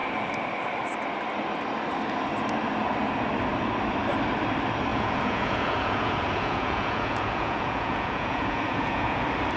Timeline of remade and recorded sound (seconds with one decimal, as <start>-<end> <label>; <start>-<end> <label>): 0.0-4.9 recorded; 4.9-9.2 remade; 9.2-9.6 recorded